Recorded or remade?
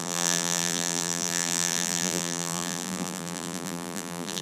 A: remade